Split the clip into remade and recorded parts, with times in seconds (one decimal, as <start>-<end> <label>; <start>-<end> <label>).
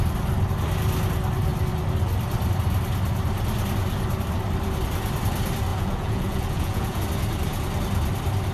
0.0-5.7 recorded; 5.7-7.0 remade; 7.0-8.5 recorded